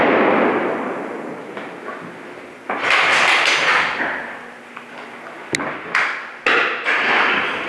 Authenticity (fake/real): real